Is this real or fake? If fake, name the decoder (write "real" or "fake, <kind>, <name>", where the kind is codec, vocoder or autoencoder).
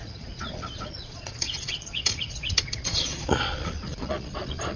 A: fake, vocoder, Vocos